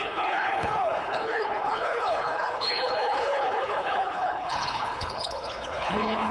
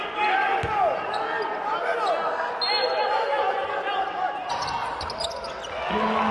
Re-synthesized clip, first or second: first